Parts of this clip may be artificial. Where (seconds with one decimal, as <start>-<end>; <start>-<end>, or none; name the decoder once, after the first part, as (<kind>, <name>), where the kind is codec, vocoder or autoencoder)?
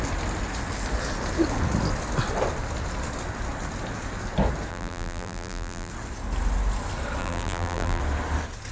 4.7-5.9 (vocoder, BigVGAN v2); 7.2-8.0